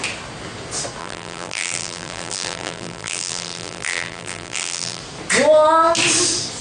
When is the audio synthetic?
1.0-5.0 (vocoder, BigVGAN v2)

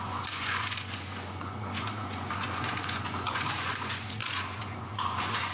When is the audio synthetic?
0.0-5.5 (vocoder, Vocos)

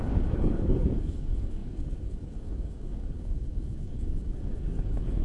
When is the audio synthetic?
0.0-5.2 (codec, DAC)

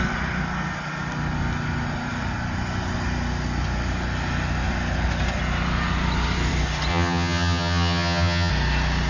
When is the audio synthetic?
6.9-8.5 (vocoder, HiFi-GAN)

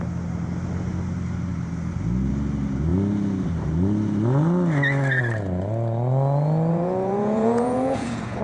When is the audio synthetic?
6.7-8.4 (vocoder, Vocos)